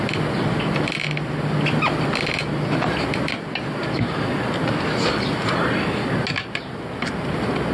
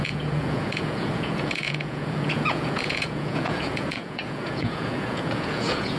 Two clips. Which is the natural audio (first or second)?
first